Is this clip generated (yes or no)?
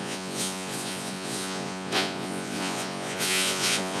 yes